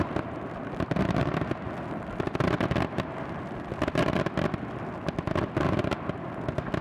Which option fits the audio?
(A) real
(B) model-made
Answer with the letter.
A